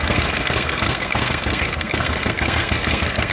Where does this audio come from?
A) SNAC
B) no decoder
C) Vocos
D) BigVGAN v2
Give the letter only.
A